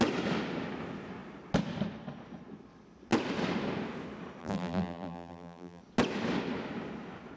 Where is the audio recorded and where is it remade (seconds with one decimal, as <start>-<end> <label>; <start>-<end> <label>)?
0.0-4.4 recorded; 4.4-5.8 remade; 5.8-7.4 recorded